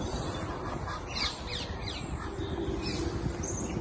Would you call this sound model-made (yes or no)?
no